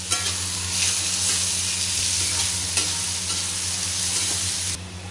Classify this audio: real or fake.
real